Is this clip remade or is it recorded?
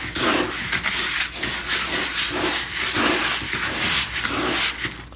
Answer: recorded